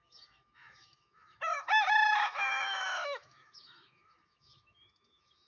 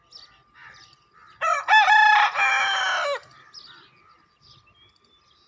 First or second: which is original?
second